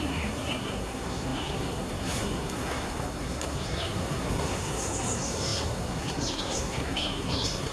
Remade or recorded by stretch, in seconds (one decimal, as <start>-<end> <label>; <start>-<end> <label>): 0.0-7.7 remade

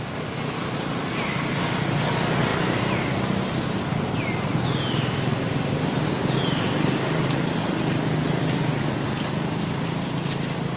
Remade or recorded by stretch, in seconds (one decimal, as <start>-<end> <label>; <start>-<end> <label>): 0.0-10.8 recorded

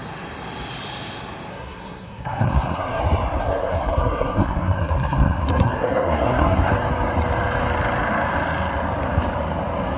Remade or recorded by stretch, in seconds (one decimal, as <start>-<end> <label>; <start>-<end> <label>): 0.0-1.5 recorded; 1.5-3.0 remade; 3.0-3.4 recorded; 3.4-6.7 remade; 6.7-10.0 recorded

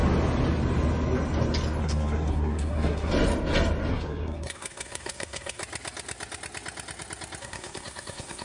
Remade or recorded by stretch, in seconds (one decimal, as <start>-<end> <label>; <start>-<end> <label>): 0.0-1.8 recorded; 1.8-3.1 remade; 3.1-3.9 recorded; 3.9-5.6 remade; 5.6-7.4 recorded; 7.4-8.4 remade

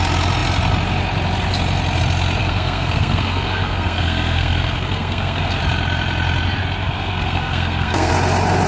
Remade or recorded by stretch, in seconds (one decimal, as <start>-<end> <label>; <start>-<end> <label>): 0.0-2.4 recorded; 2.4-5.6 remade; 5.6-6.8 recorded; 6.8-8.1 remade; 8.1-8.7 recorded

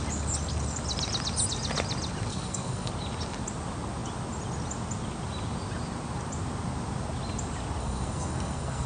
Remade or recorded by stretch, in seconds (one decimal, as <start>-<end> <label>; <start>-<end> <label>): 0.0-2.3 recorded; 2.3-2.9 remade; 2.9-7.8 recorded; 7.8-8.9 remade

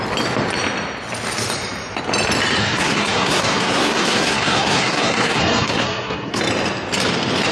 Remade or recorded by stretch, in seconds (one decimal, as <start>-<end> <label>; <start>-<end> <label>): 0.0-2.6 recorded; 2.6-6.4 remade; 6.4-7.5 recorded